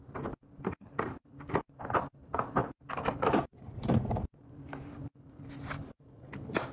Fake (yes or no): yes